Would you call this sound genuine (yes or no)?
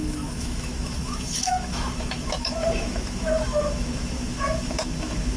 no